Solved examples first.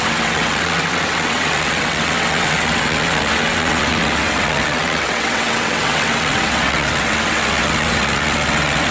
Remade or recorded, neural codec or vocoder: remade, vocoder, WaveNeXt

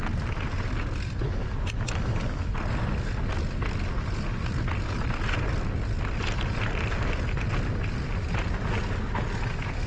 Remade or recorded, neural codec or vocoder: recorded